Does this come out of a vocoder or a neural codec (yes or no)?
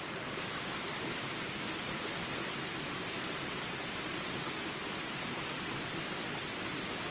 no